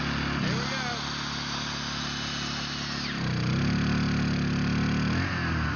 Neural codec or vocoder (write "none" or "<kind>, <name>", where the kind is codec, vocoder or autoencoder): none